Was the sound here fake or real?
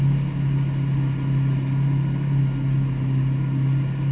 real